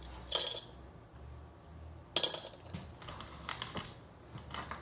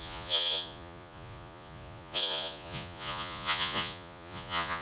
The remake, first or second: second